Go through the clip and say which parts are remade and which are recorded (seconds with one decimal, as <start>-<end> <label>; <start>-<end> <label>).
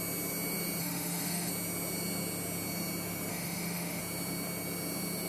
0.0-0.8 recorded; 0.8-1.5 remade; 1.5-3.3 recorded; 3.3-4.0 remade; 4.0-5.3 recorded